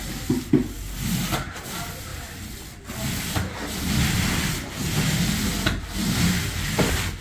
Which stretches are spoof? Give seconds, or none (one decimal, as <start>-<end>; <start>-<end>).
none